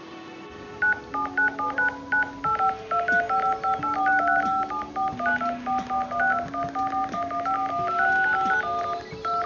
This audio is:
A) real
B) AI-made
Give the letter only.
A